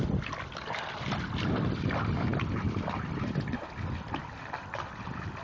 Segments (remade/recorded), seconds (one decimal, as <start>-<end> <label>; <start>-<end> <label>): 0.0-4.2 remade; 4.2-4.9 recorded; 4.9-5.4 remade